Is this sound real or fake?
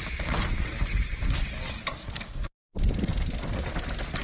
real